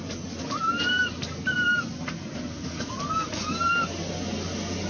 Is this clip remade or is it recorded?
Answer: recorded